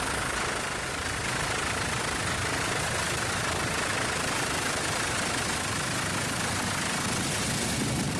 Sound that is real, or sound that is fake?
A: real